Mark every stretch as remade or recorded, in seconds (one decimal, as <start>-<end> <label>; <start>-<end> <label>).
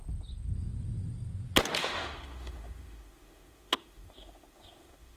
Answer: 0.0-1.8 recorded; 1.8-5.2 remade